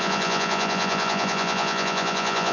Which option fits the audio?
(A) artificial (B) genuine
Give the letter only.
A